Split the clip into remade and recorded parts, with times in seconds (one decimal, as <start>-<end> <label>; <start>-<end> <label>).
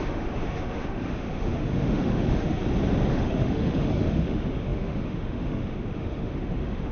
0.0-2.6 remade; 2.6-3.1 recorded; 3.1-6.9 remade